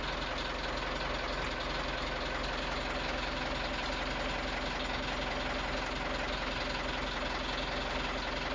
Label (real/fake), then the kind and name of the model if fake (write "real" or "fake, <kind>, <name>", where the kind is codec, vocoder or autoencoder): real